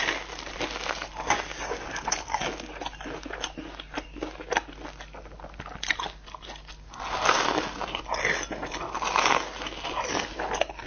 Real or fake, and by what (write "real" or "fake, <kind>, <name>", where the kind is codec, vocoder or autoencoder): real